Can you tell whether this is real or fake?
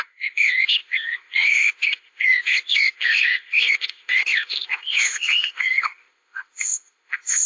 fake